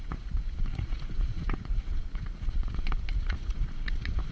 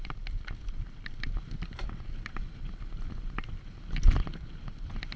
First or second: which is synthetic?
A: first